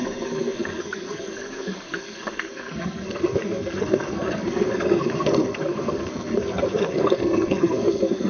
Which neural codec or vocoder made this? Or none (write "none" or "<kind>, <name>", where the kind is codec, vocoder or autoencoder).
codec, SNAC